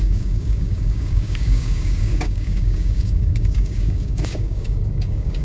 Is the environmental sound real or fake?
fake